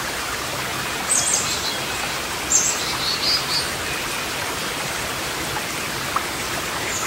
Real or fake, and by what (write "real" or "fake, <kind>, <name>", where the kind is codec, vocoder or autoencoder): real